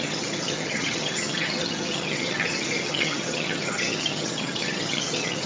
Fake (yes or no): yes